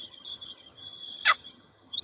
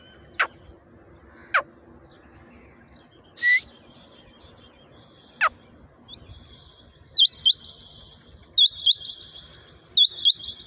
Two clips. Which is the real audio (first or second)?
second